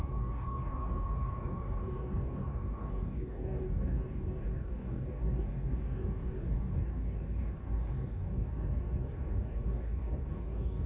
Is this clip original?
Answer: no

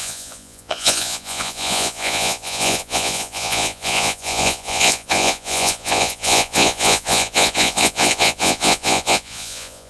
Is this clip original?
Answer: no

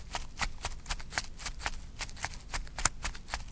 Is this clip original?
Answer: yes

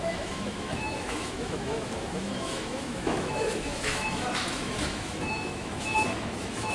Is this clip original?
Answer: no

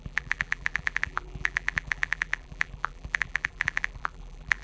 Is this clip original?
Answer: no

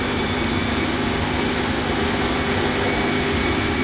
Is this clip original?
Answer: yes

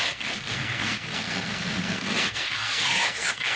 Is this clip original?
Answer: no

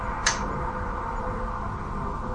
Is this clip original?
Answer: yes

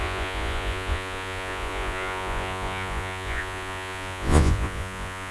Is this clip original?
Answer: no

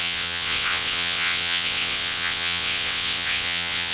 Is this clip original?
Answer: no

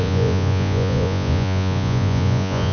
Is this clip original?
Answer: no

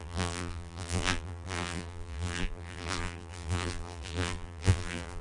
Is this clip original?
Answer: no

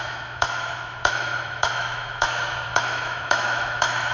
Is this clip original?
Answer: no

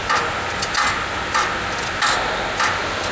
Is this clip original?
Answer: yes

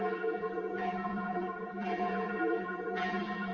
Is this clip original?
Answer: no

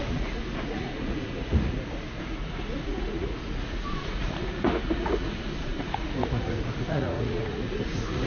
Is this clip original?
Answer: no